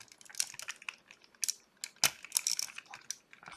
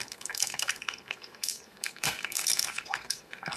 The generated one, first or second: second